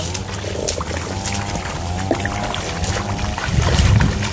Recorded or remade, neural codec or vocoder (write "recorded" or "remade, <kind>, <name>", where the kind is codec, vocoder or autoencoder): recorded